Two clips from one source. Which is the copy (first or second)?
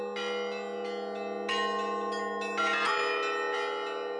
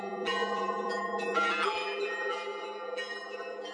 second